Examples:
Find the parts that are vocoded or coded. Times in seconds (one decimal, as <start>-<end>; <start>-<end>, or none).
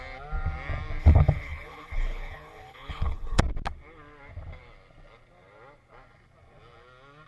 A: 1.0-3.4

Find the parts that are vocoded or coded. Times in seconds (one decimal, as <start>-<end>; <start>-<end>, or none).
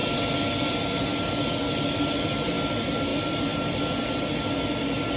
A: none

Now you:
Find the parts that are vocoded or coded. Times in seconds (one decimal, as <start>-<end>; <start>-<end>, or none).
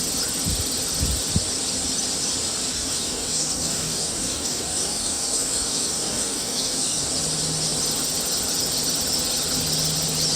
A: 2.7-7.1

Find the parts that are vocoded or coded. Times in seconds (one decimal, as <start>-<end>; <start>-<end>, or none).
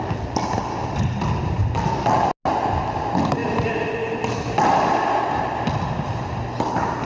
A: none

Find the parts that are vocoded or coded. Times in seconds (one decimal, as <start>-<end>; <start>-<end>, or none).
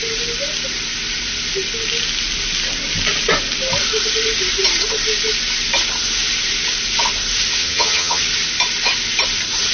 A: 7.6-8.2